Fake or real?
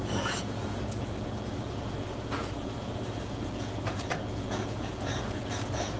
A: fake